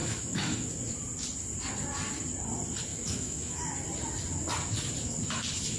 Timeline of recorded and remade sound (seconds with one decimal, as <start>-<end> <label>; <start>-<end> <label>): 0.0-0.7 remade; 0.7-2.9 recorded; 2.9-3.6 remade; 3.6-5.8 recorded